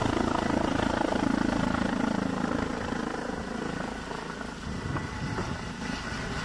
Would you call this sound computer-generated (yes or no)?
no